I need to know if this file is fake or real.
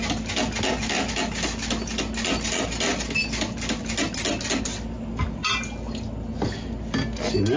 real